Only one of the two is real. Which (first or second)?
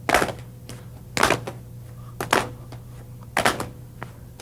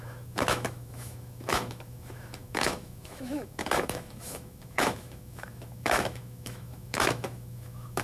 first